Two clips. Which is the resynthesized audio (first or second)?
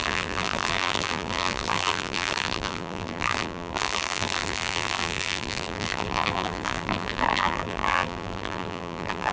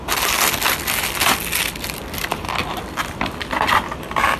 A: first